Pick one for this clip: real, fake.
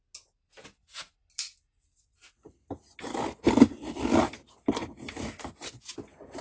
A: real